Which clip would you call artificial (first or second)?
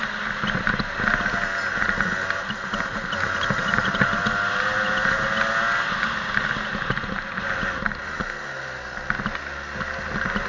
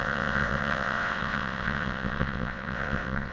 second